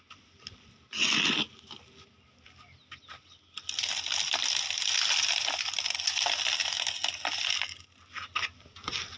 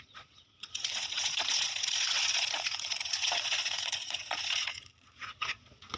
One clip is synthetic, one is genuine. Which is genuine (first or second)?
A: first